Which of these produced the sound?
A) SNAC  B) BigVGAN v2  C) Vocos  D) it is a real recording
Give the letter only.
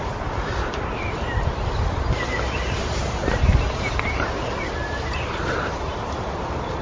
B